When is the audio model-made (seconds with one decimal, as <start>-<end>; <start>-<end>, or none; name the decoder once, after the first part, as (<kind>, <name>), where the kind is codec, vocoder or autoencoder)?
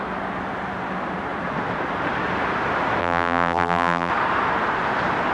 3.0-4.1 (vocoder, BigVGAN v2)